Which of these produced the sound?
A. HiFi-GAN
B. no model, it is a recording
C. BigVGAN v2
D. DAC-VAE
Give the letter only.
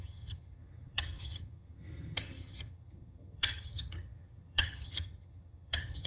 A